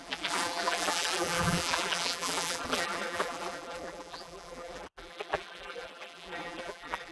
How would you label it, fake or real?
fake